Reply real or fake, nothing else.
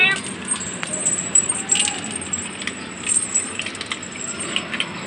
real